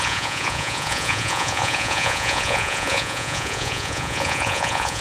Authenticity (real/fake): fake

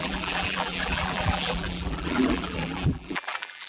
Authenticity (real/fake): fake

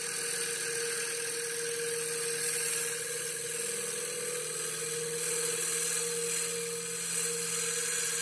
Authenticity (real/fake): real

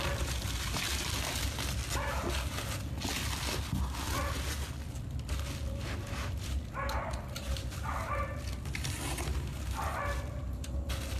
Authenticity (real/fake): real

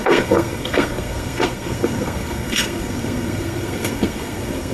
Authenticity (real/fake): fake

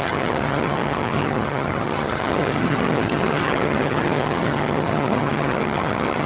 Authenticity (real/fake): fake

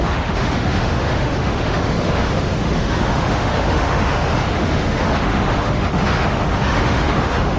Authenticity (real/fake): fake